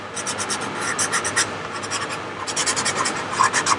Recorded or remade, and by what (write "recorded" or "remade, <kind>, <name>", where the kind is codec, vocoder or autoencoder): recorded